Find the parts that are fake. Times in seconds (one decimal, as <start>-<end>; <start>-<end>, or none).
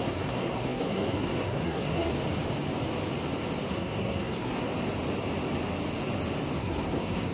0.0-2.1; 3.7-4.7; 6.6-7.3